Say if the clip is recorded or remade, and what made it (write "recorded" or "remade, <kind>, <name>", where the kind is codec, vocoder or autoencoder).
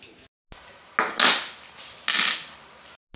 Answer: recorded